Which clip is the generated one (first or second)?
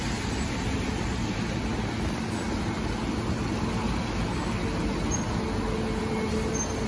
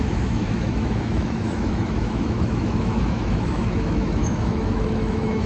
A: second